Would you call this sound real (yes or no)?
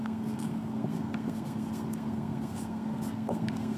no